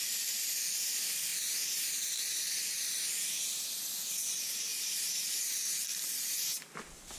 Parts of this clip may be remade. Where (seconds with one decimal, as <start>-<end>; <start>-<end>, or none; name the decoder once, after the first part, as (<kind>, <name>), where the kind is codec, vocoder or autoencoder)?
4.7-5.4 (vocoder, BigVGAN v2)